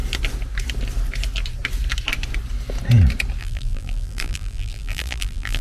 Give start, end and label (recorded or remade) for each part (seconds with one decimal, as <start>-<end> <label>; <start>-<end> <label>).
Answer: 0.0-3.4 recorded; 3.4-5.6 remade